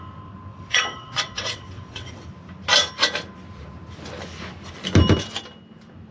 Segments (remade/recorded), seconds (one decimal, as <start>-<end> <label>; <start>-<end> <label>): 0.0-0.5 recorded; 0.5-2.2 remade; 2.2-6.1 recorded